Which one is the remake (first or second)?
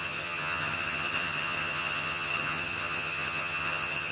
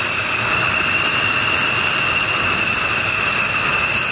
first